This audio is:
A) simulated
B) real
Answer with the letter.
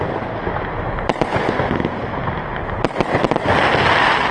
B